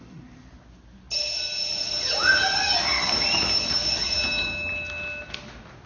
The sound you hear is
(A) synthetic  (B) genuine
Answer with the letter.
B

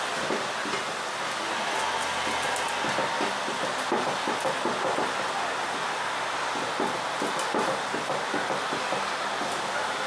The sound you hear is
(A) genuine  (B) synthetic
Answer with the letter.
A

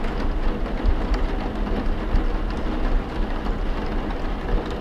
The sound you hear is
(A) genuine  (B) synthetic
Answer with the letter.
A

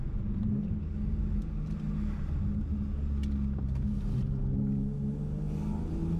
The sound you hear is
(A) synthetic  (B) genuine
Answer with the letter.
B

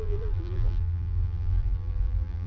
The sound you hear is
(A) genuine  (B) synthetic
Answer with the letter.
B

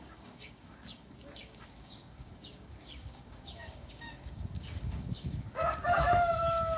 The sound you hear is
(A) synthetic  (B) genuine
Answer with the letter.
A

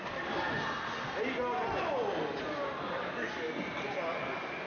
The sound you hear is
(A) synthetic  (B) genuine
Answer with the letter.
B